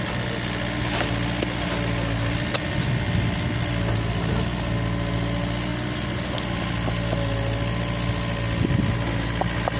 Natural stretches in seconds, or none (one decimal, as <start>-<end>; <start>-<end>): 0.0-9.8